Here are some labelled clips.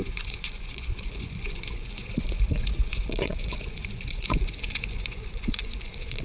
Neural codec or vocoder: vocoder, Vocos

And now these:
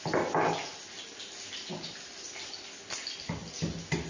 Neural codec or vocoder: none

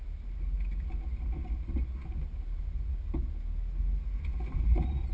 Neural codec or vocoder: none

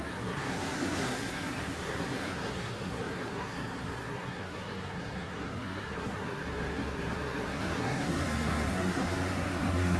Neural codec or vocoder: codec, SNAC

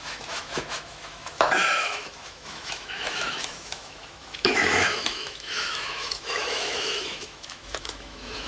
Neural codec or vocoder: autoencoder, DAC-VAE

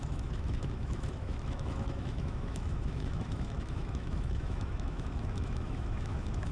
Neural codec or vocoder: autoencoder, DAC-VAE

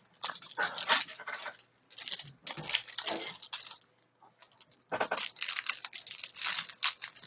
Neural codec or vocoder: none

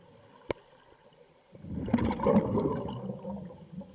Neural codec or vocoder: none